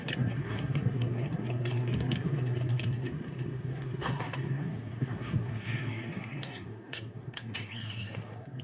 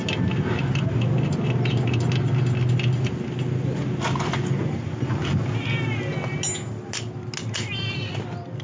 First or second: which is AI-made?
first